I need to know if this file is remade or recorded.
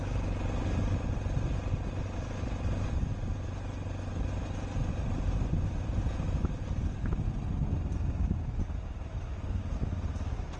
recorded